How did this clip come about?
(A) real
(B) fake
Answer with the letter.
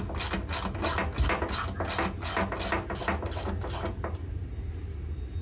A